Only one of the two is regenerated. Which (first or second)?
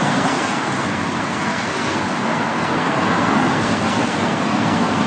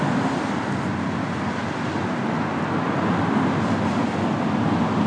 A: first